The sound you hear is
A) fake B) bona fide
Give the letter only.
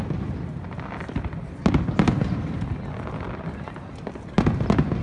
B